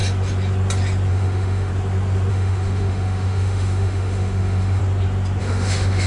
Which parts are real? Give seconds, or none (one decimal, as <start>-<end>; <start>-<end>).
0.0-1.1; 1.7-2.3; 4.8-5.4